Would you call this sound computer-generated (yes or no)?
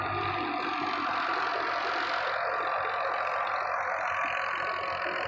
no